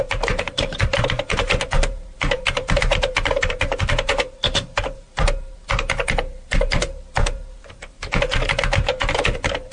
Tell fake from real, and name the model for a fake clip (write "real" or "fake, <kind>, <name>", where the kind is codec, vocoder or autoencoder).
fake, vocoder, BigVGAN v2